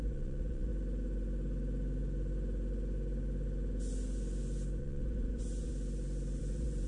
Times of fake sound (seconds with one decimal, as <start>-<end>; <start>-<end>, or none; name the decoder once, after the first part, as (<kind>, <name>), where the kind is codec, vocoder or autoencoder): 0.0-0.7 (vocoder, Vocos); 4.8-5.7; 6.4-6.9